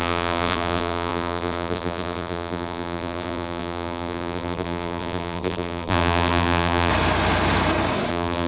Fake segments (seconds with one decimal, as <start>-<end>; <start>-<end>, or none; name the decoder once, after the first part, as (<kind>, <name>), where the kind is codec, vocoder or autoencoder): 0.0-6.9 (vocoder, BigVGAN v2); 8.1-8.5